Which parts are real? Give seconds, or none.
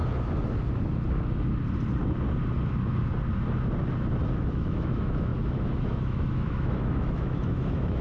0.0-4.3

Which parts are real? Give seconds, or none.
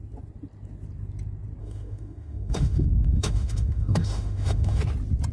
0.0-1.6; 4.8-5.3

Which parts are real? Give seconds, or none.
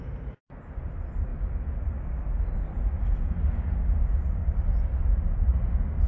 0.0-6.1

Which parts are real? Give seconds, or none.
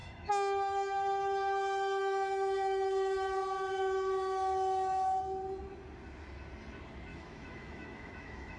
5.2-7.1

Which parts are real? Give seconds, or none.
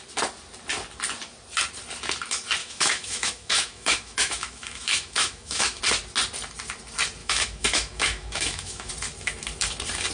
0.0-2.6; 5.8-7.2; 8.9-10.1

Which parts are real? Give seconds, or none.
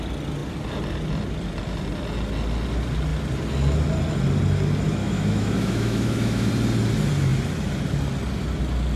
0.0-5.0; 6.5-9.0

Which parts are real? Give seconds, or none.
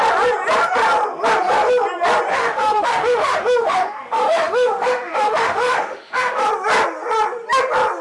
0.0-2.3; 6.5-8.0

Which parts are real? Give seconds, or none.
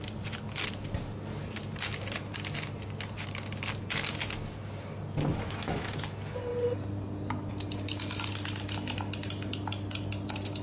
0.0-5.3; 6.0-10.6